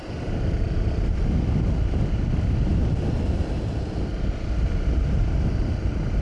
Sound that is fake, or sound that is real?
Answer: real